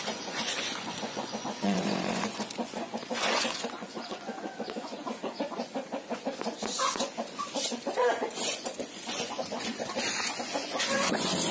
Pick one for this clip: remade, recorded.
remade